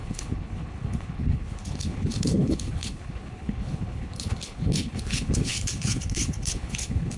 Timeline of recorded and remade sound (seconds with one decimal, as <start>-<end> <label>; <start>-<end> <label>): 0.0-7.2 remade